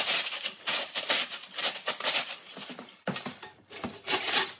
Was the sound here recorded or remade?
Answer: recorded